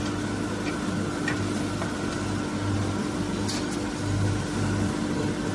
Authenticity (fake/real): real